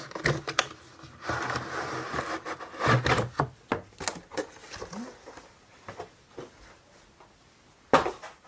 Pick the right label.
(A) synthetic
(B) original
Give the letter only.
B